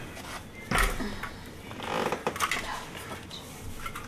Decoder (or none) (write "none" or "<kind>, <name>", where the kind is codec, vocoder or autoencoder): none